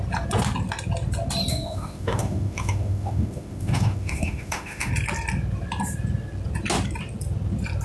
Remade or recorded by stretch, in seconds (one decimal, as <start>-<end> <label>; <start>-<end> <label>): 0.0-1.5 recorded; 1.5-4.9 remade; 4.9-7.8 recorded